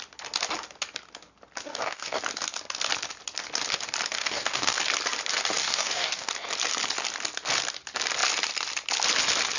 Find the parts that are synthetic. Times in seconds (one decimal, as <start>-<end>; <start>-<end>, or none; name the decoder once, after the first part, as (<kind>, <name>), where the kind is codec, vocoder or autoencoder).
1.7-2.2 (codec, DAC); 4.2-4.8; 5.6-6.3

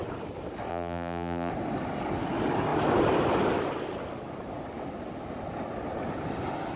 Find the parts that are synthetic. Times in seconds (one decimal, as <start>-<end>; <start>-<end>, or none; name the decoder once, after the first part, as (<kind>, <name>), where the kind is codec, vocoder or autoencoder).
0.7-1.5 (vocoder, BigVGAN v2)

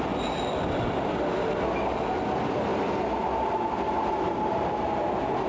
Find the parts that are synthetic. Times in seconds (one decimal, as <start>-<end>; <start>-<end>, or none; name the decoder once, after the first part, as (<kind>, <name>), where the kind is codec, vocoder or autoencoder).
none

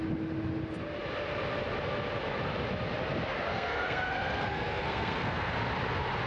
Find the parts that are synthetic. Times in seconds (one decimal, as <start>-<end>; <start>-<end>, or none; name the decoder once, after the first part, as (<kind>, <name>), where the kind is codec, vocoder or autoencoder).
3.5-5.5 (codec, SNAC)